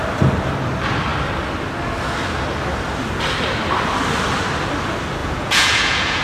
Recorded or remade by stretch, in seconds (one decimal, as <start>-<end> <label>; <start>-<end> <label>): 0.0-5.2 recorded; 5.2-6.2 remade